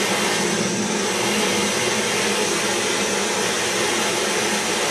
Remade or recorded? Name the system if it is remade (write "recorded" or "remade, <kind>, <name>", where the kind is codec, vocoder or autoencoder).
recorded